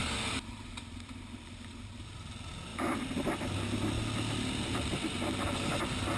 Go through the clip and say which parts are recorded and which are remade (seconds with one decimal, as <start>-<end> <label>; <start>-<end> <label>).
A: 0.0-6.2 recorded